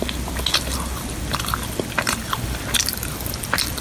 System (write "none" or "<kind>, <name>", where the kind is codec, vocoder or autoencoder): none